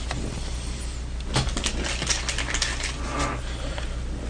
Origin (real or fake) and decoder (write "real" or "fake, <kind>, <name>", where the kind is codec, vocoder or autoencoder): real